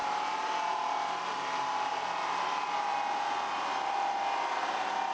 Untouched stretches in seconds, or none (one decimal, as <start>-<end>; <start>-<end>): 0.0-5.1